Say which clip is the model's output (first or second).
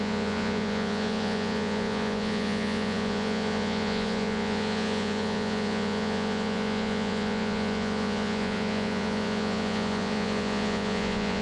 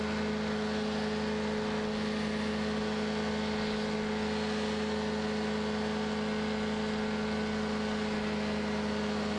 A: first